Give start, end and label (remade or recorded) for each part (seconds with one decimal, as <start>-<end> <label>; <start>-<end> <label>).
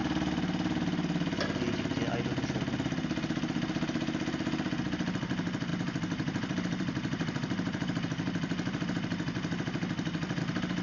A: 0.0-5.7 recorded; 5.7-10.4 remade; 10.4-10.8 recorded